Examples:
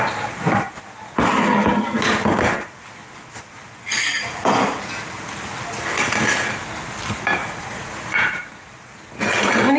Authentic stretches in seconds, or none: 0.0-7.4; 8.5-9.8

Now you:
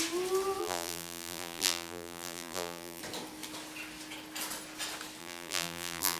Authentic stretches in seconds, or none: 0.0-0.6; 3.0-5.2

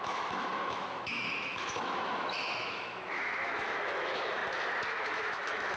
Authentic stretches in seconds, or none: 4.4-4.9

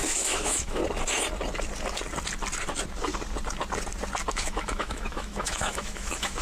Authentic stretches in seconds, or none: 0.8-4.3